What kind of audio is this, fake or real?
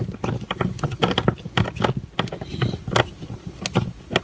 real